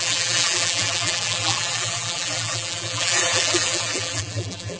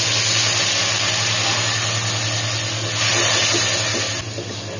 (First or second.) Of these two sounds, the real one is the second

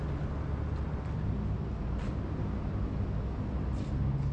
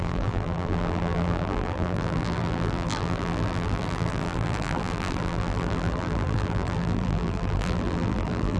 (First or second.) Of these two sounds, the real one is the first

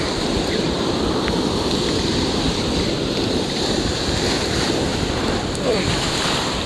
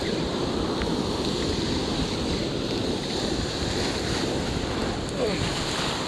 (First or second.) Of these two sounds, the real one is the second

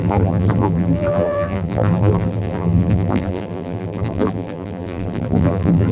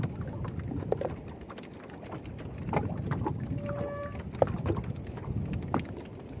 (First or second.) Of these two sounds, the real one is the second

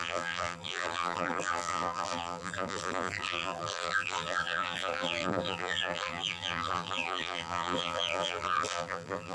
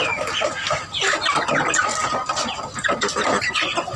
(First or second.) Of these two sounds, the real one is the second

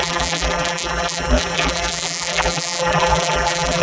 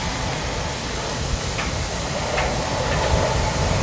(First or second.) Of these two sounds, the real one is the second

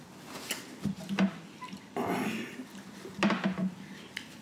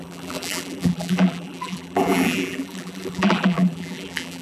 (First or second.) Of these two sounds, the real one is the first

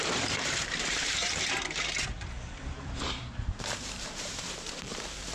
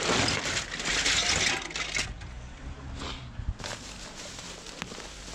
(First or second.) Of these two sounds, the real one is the second